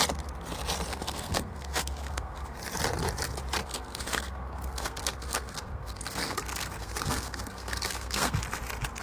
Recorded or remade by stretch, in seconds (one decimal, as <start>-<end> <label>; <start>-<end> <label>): 0.0-0.9 recorded; 0.9-2.6 remade; 2.6-3.6 recorded; 3.6-8.4 remade; 8.4-9.0 recorded